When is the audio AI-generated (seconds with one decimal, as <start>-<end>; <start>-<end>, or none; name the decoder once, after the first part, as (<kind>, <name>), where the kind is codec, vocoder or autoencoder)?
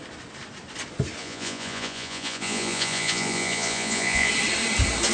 1.2-4.3 (vocoder, Vocos)